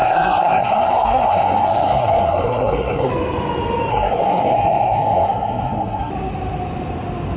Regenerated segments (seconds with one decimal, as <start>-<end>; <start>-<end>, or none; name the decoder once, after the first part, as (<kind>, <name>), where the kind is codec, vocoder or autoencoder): 0.0-3.1 (codec, SNAC); 3.9-6.1